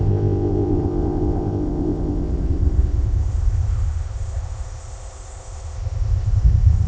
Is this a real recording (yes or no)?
no